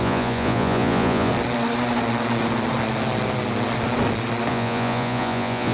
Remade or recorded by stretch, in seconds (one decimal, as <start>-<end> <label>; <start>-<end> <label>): 0.0-1.3 remade; 1.3-4.5 recorded; 4.5-5.7 remade